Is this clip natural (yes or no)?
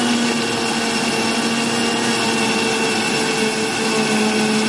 yes